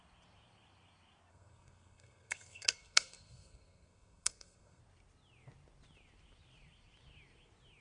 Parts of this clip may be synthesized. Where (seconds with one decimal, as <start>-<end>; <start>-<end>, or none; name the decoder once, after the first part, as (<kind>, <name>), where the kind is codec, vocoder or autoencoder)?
1.3-4.8 (codec, SNAC)